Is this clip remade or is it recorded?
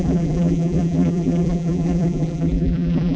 remade